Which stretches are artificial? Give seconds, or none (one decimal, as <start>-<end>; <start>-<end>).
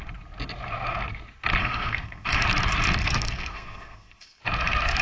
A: 1.6-2.4; 3.0-4.4